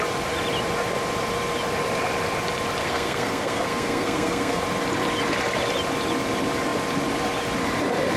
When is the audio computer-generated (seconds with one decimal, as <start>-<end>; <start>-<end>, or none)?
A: 2.8-4.6